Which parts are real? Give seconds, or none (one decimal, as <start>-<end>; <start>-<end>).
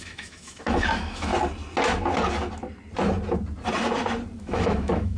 1.3-4.4